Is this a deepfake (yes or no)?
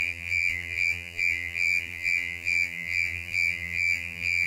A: yes